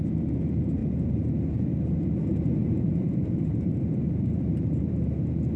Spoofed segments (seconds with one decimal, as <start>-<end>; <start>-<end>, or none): 0.8-2.2; 2.6-4.9